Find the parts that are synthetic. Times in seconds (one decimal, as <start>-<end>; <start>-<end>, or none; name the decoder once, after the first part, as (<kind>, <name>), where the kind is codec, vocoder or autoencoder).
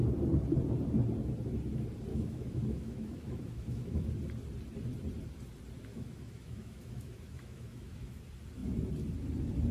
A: 2.1-4.1 (autoencoder, DAC-VAE); 5.9-8.2